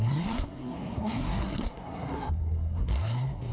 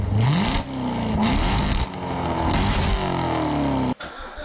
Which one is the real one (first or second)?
second